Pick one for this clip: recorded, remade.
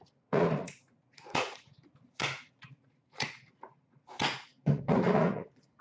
remade